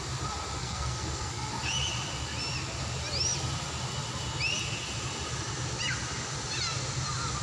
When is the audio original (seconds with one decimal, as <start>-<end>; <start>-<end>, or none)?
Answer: 0.0-0.6; 1.5-7.4